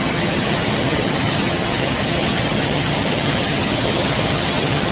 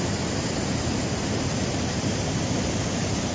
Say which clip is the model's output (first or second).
first